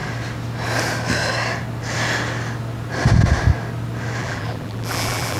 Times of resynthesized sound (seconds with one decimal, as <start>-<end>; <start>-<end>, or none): 4.2-5.4